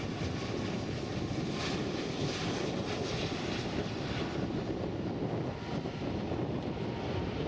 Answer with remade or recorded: recorded